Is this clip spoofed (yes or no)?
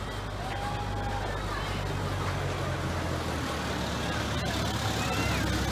no